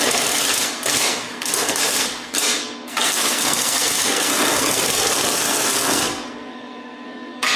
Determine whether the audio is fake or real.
fake